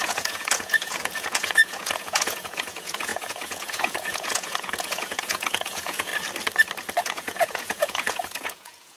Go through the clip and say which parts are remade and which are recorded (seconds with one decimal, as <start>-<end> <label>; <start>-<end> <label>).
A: 0.0-6.1 remade; 6.1-7.0 recorded; 7.0-9.0 remade